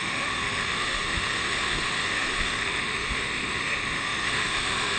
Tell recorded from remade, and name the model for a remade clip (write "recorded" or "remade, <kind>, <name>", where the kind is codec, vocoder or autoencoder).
remade, autoencoder, DAC-VAE